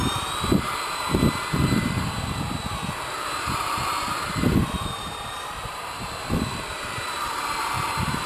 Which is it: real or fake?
fake